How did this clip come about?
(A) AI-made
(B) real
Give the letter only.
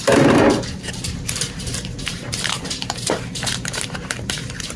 A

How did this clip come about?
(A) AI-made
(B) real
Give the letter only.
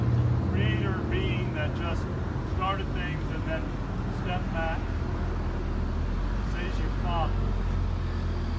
B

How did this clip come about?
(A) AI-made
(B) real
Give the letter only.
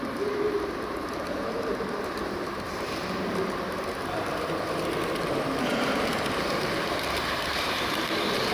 A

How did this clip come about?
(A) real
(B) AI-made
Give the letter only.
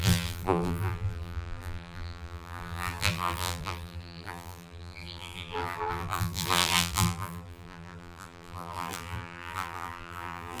B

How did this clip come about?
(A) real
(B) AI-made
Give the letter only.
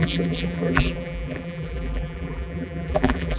B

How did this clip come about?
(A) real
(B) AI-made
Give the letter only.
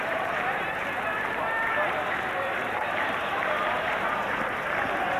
B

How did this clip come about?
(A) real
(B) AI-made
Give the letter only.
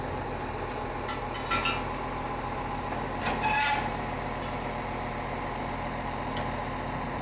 A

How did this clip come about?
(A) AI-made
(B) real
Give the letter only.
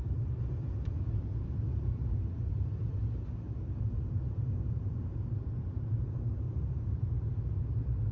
A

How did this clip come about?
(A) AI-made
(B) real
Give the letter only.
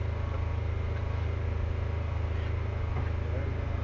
B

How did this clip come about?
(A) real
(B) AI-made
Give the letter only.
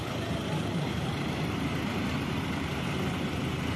B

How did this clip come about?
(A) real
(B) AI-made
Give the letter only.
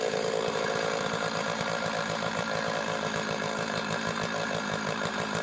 B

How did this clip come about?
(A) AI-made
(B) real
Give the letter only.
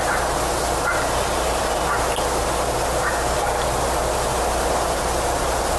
B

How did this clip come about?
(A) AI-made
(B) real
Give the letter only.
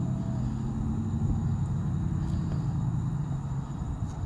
B